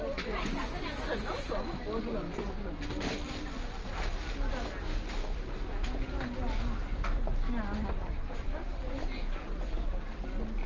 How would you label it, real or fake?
real